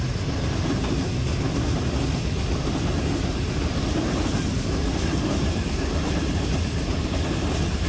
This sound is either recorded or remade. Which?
recorded